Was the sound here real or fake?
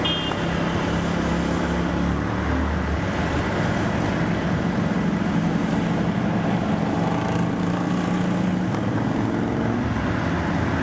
real